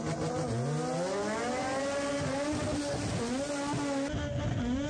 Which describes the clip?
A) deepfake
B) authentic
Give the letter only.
B